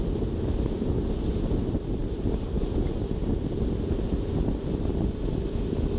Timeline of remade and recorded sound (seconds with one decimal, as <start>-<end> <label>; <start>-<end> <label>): 0.0-6.0 recorded